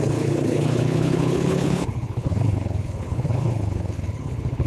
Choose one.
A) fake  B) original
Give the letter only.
A